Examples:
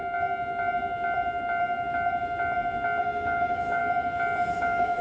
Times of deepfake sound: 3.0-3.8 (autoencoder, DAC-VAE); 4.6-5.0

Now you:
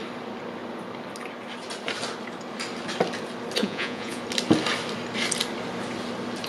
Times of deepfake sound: 3.6-4.2 (vocoder, Vocos)

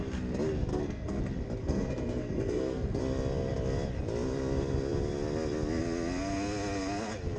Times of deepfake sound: 0.7-1.2 (codec, SNAC); 1.6-3.0

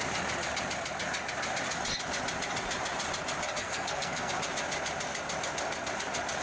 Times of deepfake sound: 3.6-4.3 (codec, SNAC)

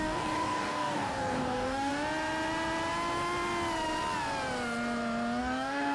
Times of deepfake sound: 0.0-1.9 (codec, DAC); 5.4-5.9

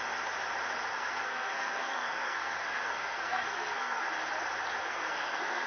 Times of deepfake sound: 0.9-4.1 (codec, SNAC); 4.8-5.7

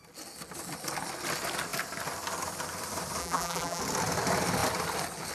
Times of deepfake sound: 3.2-3.8 (vocoder, BigVGAN v2)